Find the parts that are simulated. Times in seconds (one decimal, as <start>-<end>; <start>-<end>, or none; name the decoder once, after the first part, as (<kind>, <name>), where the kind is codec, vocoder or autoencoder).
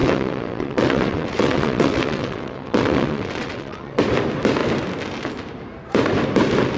0.0-4.0 (vocoder, WaveNeXt)